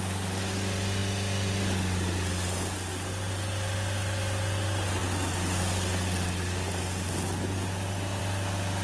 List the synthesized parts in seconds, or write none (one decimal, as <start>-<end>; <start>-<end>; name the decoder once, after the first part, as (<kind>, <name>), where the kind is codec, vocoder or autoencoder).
none